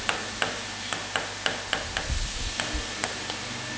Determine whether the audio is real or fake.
real